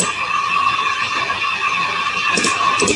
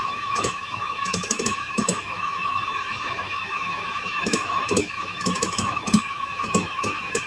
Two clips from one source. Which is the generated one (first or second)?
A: second